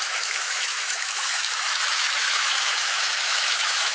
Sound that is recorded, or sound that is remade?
remade